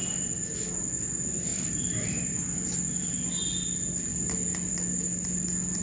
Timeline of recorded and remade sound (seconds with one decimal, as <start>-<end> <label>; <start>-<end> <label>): 0.0-0.7 remade; 0.7-1.5 recorded; 1.5-3.1 remade; 3.1-5.8 recorded